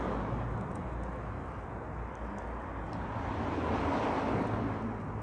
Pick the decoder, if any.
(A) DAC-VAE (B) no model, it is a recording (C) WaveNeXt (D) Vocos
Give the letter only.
B